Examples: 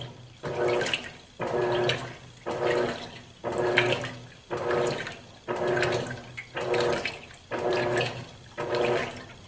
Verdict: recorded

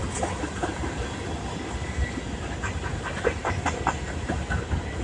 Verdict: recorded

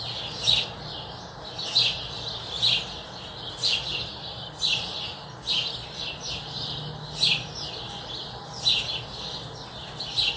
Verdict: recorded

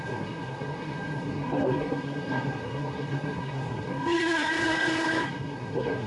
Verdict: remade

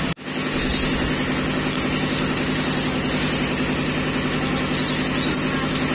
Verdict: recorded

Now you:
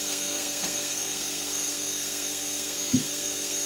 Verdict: remade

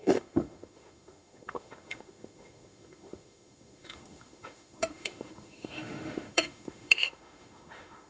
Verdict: remade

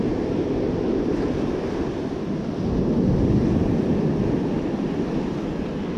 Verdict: recorded